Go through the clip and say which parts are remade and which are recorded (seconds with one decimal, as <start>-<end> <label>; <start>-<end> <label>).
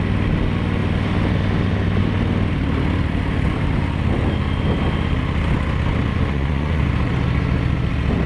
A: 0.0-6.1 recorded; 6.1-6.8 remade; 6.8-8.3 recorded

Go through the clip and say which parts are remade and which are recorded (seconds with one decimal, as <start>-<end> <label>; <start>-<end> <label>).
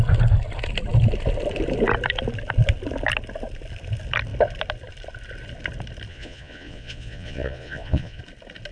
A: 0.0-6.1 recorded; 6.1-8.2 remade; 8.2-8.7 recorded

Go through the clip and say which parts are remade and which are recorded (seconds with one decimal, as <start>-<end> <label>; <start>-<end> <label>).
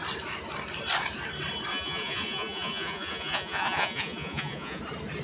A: 0.0-1.7 recorded; 1.7-4.8 remade; 4.8-5.2 recorded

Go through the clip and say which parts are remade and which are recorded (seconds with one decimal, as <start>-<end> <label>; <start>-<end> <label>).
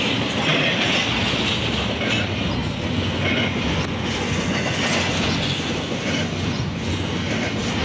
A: 0.0-2.6 recorded; 2.6-7.3 remade; 7.3-7.8 recorded